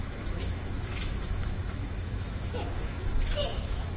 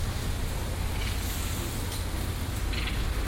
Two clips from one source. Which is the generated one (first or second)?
first